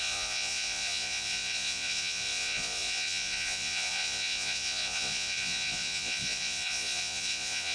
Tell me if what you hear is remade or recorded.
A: remade